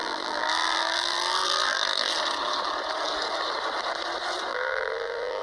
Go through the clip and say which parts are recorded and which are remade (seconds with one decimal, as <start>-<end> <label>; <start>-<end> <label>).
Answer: 0.0-2.1 remade; 2.1-4.5 recorded; 4.5-5.4 remade